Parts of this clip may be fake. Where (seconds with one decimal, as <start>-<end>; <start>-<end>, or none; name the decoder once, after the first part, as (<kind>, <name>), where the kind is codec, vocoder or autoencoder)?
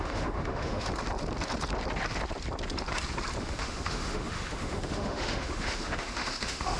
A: 0.0-0.9 (autoencoder, DAC-VAE); 3.4-6.8